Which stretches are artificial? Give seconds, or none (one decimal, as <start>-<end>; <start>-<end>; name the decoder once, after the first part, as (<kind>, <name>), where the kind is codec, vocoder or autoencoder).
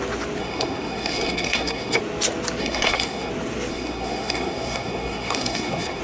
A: 0.4-2.0 (codec, SNAC); 2.6-3.3; 3.7-6.0